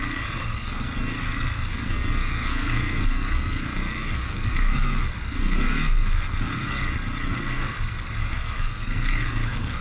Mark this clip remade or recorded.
remade